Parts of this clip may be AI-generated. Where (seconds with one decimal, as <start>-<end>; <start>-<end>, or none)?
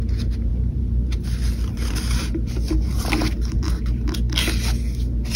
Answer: 0.5-3.7